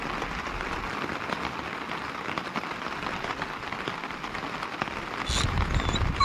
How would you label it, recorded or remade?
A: recorded